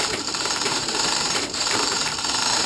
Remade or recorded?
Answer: remade